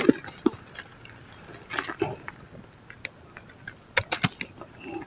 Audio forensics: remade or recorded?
recorded